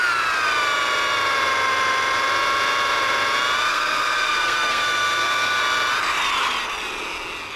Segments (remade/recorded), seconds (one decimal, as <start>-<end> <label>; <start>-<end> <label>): 0.0-3.7 recorded; 3.7-5.6 remade; 5.6-7.6 recorded